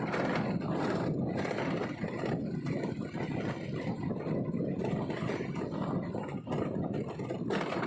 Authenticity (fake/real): real